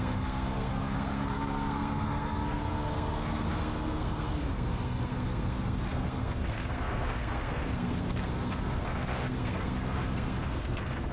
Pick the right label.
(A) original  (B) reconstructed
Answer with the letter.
B